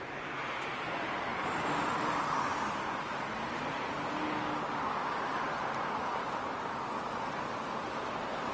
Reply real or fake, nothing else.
real